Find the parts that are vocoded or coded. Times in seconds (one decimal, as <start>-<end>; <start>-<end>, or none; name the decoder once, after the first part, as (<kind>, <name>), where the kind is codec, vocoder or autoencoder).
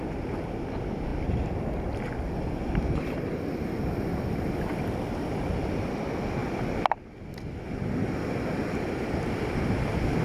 6.4-8.8 (vocoder, BigVGAN v2)